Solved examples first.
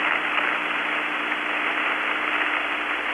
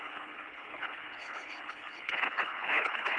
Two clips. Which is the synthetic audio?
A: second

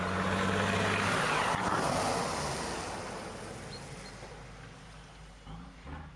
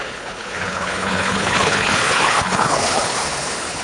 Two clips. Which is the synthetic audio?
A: second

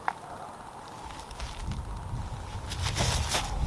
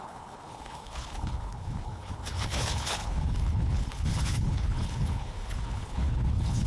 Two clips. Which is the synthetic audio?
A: second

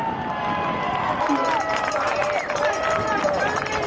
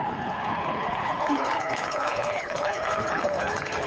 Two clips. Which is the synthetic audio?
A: second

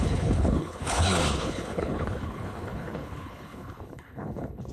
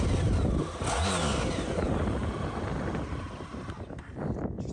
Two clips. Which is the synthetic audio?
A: first